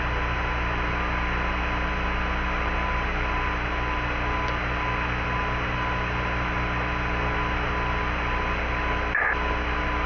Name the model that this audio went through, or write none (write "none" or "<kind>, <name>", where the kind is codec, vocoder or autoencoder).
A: none